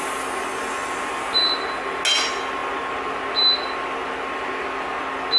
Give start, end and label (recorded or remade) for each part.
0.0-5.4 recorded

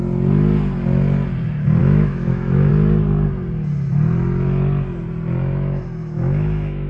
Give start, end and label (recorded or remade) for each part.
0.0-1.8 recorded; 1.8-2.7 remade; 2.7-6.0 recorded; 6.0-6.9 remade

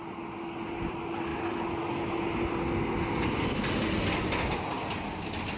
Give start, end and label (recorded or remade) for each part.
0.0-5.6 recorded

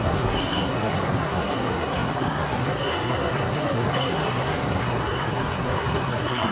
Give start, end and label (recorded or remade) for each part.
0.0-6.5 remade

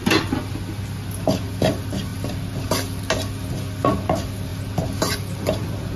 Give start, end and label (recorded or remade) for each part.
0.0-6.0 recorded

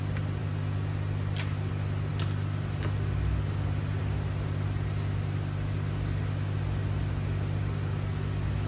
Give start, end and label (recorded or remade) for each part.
0.0-8.7 recorded

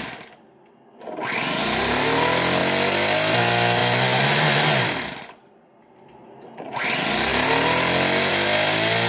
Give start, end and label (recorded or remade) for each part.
0.0-9.1 recorded

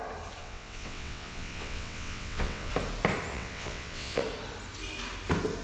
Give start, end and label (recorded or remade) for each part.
0.0-0.4 recorded; 0.4-2.7 remade; 2.7-3.3 recorded; 3.3-4.2 remade; 4.2-5.6 recorded